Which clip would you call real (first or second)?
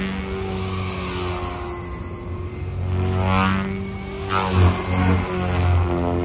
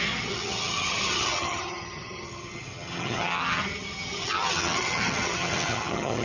first